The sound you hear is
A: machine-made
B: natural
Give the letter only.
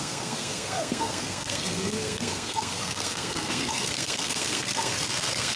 A